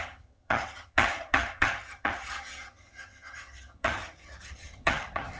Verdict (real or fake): fake